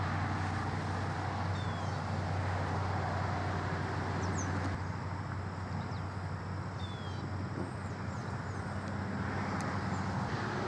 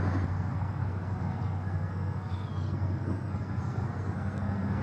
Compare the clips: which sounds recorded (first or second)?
first